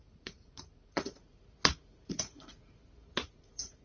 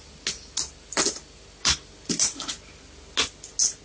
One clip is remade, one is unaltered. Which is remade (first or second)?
first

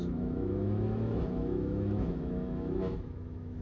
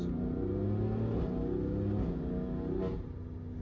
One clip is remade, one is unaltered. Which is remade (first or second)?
first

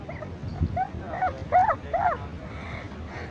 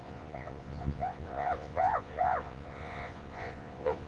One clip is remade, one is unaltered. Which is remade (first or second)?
second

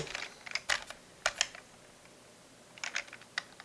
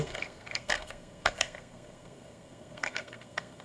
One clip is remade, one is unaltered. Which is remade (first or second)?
second